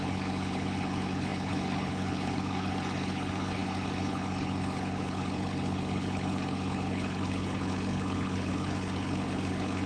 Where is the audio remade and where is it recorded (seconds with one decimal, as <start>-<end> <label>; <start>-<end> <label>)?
0.0-9.9 remade